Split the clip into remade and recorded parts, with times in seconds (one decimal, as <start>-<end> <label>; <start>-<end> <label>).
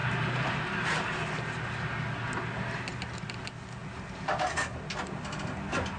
0.0-0.9 remade; 0.9-2.9 recorded; 2.9-3.4 remade; 3.4-6.0 recorded